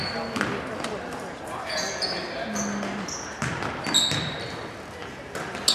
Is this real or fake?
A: real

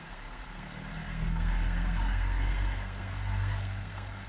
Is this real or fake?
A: fake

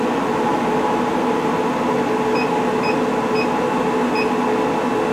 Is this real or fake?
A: real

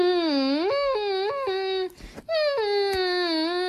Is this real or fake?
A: real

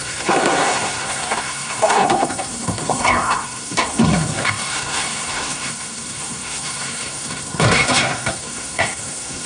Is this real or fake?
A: fake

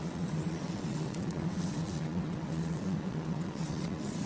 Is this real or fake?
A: fake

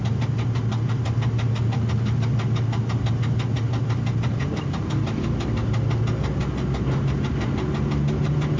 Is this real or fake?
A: real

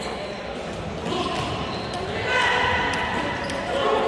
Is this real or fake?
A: real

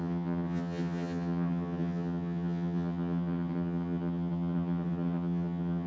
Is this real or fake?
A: fake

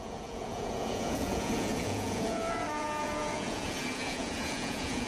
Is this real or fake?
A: fake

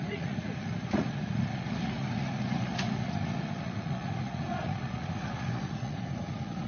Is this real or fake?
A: fake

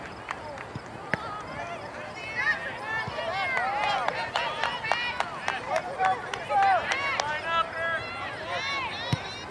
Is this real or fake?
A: real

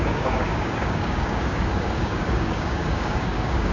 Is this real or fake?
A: fake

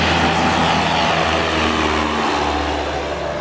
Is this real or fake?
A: real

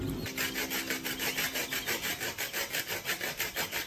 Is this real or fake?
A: real